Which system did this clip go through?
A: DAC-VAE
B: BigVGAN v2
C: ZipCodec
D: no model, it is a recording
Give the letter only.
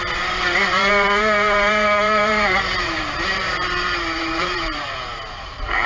B